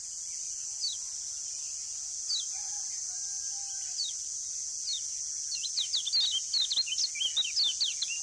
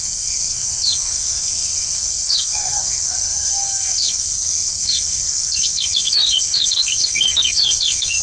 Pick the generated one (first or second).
second